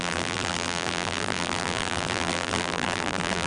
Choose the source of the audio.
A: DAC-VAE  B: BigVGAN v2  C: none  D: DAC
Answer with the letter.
B